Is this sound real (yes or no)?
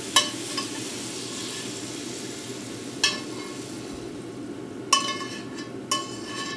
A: yes